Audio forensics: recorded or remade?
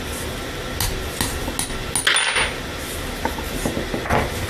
recorded